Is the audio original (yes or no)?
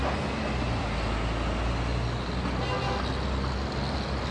yes